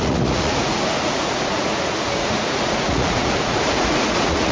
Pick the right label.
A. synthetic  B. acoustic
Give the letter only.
A